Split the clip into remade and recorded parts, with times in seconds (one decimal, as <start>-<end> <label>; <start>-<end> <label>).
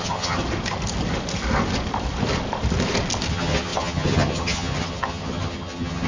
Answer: 0.0-0.4 remade; 0.4-3.3 recorded; 3.3-6.1 remade